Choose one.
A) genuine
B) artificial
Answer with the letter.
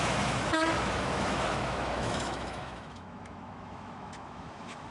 B